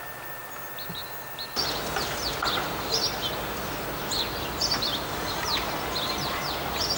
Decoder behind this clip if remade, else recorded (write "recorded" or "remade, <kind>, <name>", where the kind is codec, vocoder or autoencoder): recorded